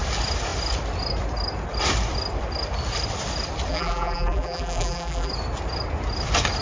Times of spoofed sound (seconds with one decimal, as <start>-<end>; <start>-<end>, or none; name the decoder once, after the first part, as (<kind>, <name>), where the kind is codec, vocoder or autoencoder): 3.7-5.3 (vocoder, BigVGAN v2)